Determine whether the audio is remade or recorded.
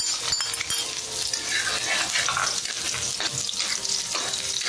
recorded